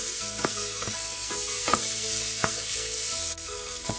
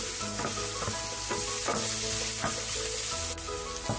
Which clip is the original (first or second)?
second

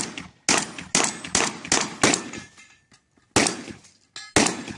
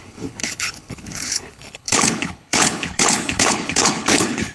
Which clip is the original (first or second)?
first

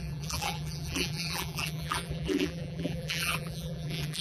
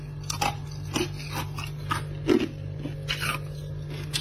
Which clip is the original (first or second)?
second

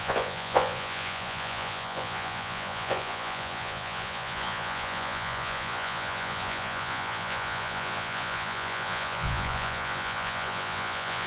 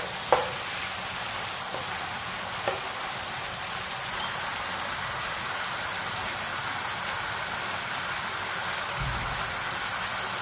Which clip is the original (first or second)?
second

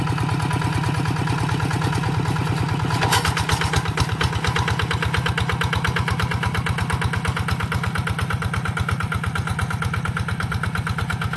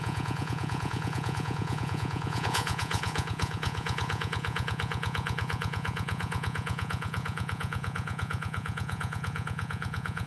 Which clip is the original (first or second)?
first